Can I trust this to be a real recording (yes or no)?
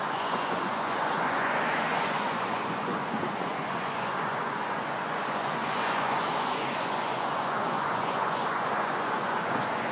no